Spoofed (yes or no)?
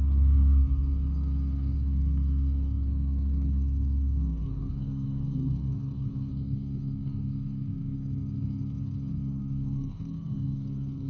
yes